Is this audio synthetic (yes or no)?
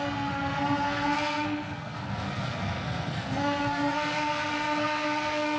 yes